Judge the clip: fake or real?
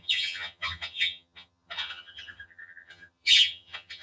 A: fake